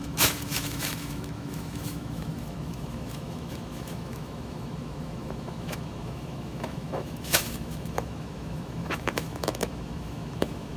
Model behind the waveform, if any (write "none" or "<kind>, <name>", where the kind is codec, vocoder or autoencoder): autoencoder, DAC-VAE